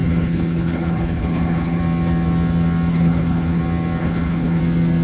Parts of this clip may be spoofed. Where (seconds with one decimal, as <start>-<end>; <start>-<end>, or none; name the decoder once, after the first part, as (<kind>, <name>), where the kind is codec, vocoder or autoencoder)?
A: 0.0-1.8 (codec, HILCodec); 2.9-3.6; 4.0-4.6